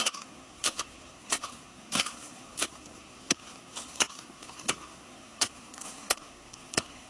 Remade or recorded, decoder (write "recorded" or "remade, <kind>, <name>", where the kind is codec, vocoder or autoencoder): remade, codec, SNAC